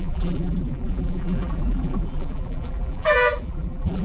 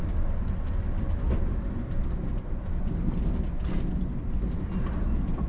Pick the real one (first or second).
second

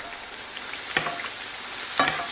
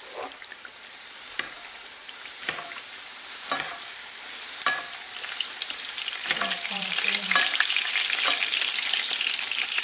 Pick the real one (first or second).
first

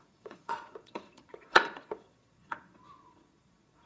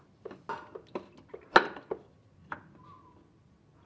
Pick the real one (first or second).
second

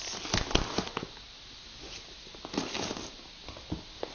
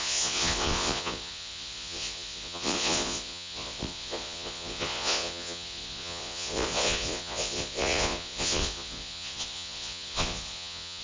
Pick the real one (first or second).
first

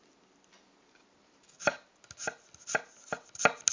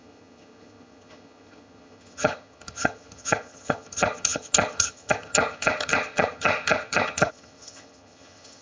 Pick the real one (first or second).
first